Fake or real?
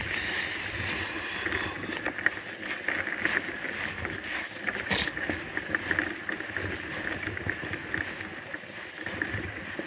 real